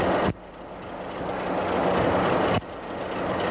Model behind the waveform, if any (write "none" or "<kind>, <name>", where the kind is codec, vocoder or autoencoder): none